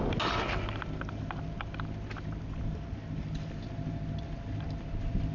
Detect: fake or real real